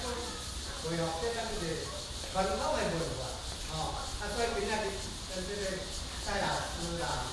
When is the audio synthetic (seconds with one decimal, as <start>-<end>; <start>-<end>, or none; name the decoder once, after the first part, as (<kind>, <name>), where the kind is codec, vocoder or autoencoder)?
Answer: none